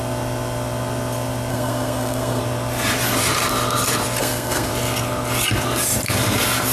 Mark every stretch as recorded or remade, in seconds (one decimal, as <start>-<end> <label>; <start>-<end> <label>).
0.0-1.5 recorded; 1.5-2.4 remade; 2.4-4.2 recorded; 4.2-4.7 remade; 4.7-6.7 recorded